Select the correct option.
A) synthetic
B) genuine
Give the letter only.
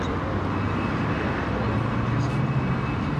B